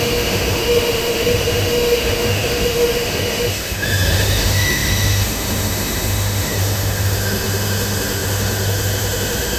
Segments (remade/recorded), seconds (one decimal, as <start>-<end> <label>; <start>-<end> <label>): 0.0-9.6 remade